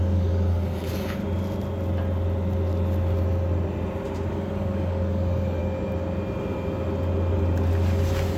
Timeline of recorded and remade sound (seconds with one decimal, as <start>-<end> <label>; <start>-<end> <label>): 0.0-1.2 remade; 1.2-4.3 recorded; 4.3-5.6 remade; 5.6-8.4 recorded